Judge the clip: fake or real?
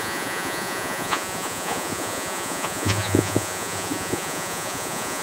fake